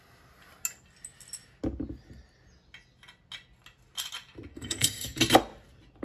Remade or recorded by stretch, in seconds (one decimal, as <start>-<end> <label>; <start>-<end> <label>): 0.0-4.5 recorded; 4.5-5.2 remade; 5.2-6.0 recorded